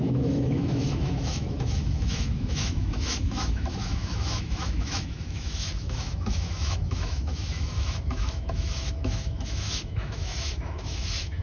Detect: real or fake fake